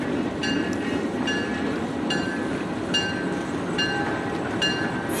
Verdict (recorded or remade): recorded